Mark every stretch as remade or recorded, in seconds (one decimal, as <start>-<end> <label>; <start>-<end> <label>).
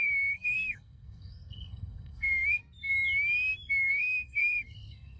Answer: 0.0-2.6 remade; 2.6-3.9 recorded; 3.9-5.2 remade